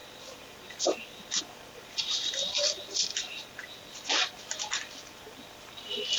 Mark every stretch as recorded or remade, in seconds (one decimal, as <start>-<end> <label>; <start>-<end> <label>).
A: 0.0-6.2 remade